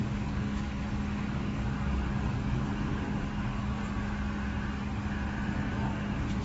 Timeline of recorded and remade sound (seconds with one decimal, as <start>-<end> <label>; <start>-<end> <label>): 0.0-3.8 remade; 3.8-6.4 recorded